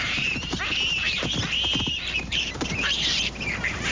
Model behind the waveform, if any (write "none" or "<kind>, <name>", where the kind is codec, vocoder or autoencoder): vocoder, BigVGAN v2